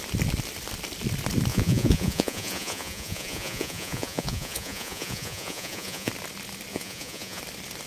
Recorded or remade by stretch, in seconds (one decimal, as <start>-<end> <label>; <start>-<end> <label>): 0.0-1.5 recorded; 1.5-6.1 remade; 6.1-6.7 recorded; 6.7-7.4 remade; 7.4-7.9 recorded